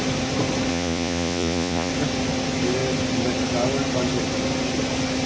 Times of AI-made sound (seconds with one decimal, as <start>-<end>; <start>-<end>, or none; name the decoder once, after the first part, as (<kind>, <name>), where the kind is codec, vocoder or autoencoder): 0.7-1.9 (vocoder, Vocos)